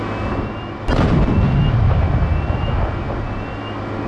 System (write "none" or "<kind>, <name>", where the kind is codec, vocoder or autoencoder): none